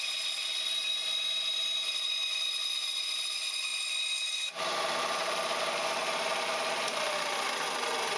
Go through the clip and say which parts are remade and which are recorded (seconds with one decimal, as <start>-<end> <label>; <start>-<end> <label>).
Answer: 0.0-8.2 recorded